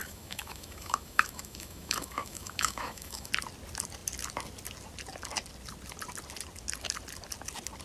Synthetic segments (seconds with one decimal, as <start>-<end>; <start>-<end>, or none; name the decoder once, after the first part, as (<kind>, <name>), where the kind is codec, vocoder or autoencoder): 0.0-3.3 (autoencoder, DAC-VAE)